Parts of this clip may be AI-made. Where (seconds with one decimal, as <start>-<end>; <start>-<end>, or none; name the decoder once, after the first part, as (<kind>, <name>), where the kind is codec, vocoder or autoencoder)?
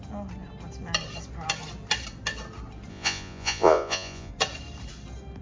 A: 2.9-4.3 (vocoder, Vocos)